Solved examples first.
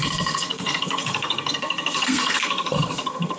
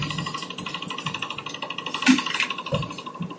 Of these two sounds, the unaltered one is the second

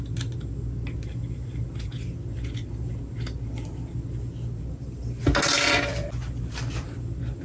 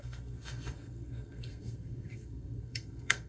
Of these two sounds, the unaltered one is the first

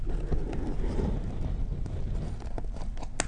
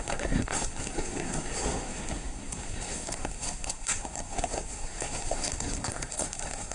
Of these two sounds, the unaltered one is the first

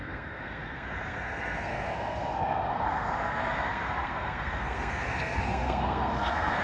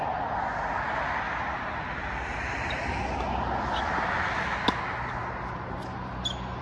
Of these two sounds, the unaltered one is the second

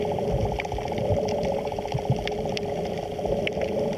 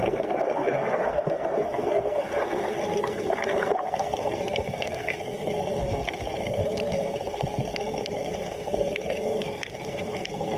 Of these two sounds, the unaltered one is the first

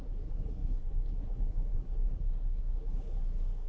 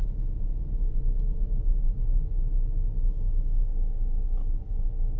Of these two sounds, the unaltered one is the second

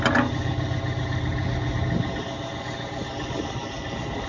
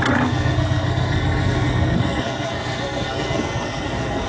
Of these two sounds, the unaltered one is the first